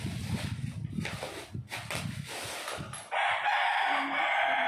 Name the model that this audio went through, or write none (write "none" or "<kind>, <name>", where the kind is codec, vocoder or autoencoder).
none